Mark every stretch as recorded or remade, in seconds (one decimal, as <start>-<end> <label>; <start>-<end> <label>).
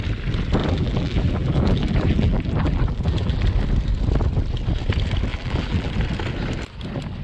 0.0-0.6 recorded; 0.6-3.4 remade; 3.4-5.3 recorded; 5.3-5.9 remade; 5.9-7.2 recorded